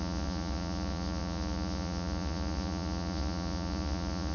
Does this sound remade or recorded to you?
remade